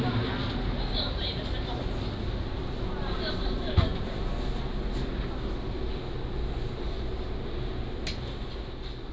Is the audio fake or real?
real